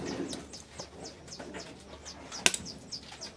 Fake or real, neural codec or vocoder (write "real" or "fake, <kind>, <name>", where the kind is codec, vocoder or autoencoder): real